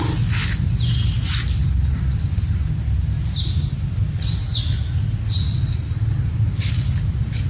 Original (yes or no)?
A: yes